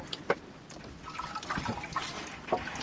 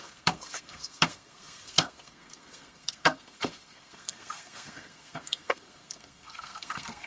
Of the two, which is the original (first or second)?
first